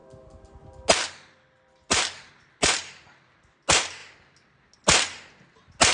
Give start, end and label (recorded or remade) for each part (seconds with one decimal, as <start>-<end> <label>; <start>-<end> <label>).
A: 0.0-5.9 recorded